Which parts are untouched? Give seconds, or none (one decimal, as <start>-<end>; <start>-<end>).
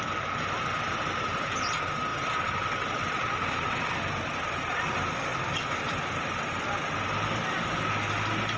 0.0-8.6